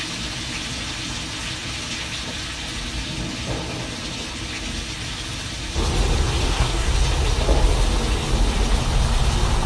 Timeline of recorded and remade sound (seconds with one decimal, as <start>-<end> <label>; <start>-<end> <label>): 0.0-6.4 recorded; 6.4-6.9 remade; 6.9-9.7 recorded